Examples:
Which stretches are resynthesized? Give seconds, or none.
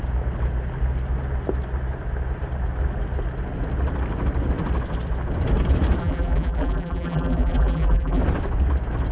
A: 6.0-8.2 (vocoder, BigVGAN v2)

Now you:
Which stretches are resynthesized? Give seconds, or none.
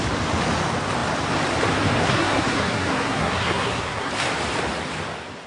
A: 2.0-4.1 (codec, SNAC)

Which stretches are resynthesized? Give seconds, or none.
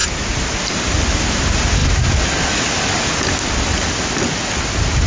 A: none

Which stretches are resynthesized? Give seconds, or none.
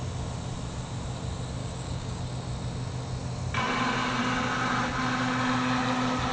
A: 1.6-2.3 (codec, DAC)